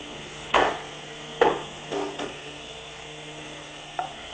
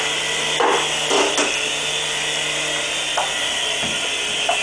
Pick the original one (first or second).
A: second